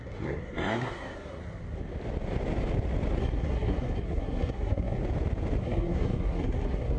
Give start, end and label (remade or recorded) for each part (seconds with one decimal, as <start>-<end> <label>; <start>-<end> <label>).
0.0-1.4 remade; 1.4-3.2 recorded; 3.2-5.0 remade; 5.0-5.6 recorded; 5.6-7.0 remade

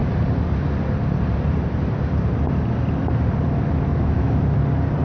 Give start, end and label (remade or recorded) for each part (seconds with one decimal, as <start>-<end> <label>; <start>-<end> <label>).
0.0-3.9 recorded; 3.9-4.6 remade; 4.6-5.0 recorded

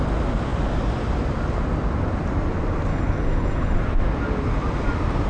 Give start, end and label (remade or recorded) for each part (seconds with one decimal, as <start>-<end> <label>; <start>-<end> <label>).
0.0-2.9 recorded; 2.9-3.8 remade; 3.8-5.3 recorded

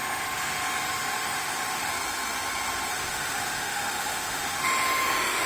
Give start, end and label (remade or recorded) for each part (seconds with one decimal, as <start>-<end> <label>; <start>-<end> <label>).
0.0-1.9 remade; 1.9-2.9 recorded; 2.9-5.5 remade